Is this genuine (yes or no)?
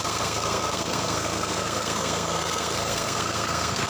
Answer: no